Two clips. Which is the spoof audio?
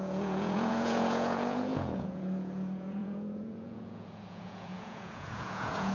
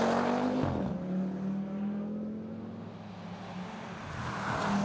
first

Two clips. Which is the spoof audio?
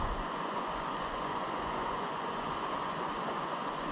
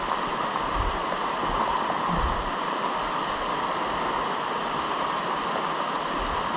first